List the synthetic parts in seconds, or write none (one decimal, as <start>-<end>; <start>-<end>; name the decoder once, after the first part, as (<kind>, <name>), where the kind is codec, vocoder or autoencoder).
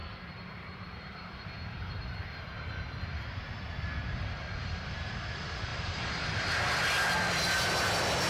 0.0-1.8 (vocoder, BigVGAN v2); 5.7-6.6